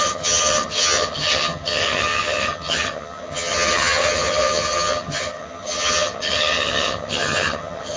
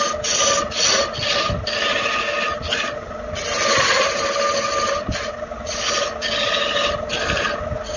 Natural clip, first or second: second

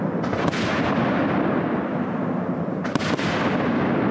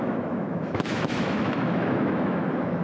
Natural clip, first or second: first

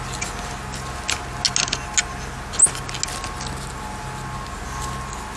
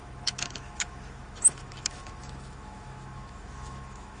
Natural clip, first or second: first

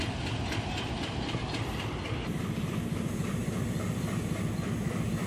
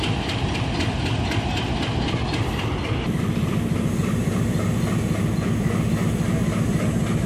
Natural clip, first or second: second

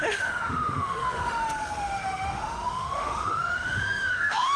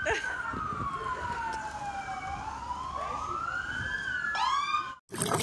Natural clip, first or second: second